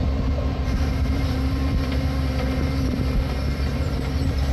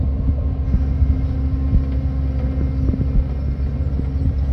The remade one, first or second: first